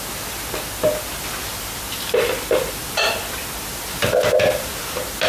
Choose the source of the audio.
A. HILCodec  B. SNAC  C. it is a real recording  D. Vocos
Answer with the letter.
C